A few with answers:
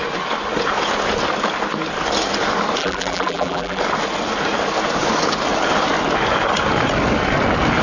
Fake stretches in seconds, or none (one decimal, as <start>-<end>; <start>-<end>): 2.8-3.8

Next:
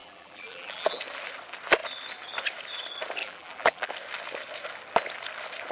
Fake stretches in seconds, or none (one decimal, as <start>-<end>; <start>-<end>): 0.0-1.0; 3.2-3.9

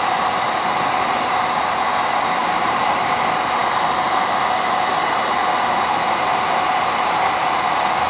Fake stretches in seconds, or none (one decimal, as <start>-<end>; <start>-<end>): 2.4-3.0

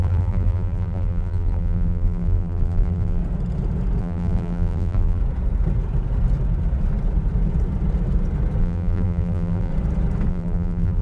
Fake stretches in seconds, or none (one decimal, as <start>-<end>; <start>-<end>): 0.0-3.2; 4.0-5.2; 8.6-9.7; 10.3-11.0

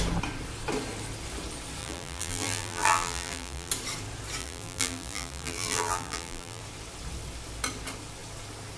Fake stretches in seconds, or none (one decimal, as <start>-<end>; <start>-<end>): 1.8-3.7; 4.4-6.6